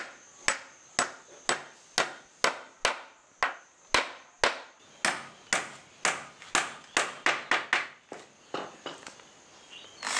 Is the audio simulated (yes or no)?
no